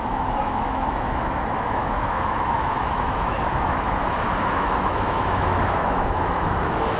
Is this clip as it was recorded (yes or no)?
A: no